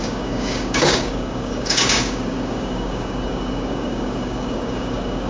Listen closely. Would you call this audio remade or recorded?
remade